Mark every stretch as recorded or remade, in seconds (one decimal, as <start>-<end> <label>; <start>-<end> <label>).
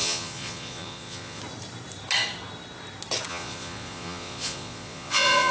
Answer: 0.0-1.4 remade; 1.4-3.3 recorded; 3.3-5.5 remade